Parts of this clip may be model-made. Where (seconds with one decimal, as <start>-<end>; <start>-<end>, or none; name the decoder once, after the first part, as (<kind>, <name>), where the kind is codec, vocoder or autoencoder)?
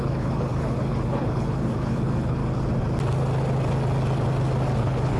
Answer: 0.0-2.4 (codec, HILCodec); 4.8-5.2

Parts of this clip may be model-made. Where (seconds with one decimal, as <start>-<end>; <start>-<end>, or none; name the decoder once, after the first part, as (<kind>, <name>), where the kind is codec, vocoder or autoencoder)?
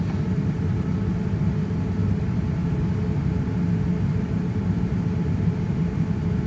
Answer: 0.0-0.9 (vocoder, BigVGAN v2); 1.9-2.6; 4.1-6.5